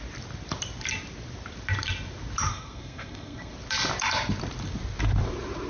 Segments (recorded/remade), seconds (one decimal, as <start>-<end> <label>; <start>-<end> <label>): 0.0-2.5 recorded; 2.5-3.5 remade; 3.5-5.7 recorded